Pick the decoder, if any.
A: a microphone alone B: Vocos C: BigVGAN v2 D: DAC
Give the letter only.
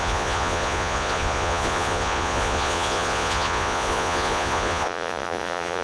B